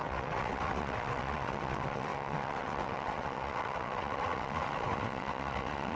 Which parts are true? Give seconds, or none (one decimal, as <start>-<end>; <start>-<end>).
none

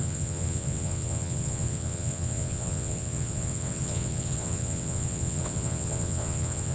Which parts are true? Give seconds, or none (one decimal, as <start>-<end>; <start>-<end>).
none

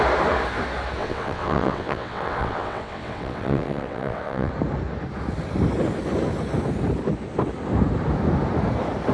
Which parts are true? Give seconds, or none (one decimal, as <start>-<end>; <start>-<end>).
0.0-1.0; 4.5-9.1

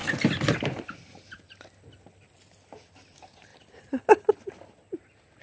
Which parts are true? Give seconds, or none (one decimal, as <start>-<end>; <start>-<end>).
0.0-5.4

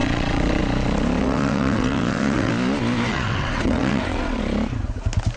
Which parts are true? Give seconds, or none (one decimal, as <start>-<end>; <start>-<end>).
0.6-1.2; 2.5-3.1; 4.4-5.4

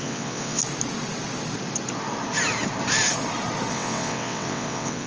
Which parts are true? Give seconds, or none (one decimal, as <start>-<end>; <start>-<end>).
0.6-3.7

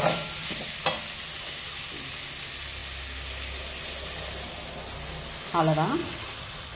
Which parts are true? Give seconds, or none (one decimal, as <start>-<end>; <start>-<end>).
0.0-6.0

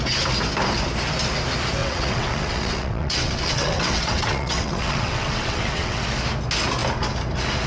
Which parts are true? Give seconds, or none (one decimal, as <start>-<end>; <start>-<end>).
0.0-1.8; 6.0-7.7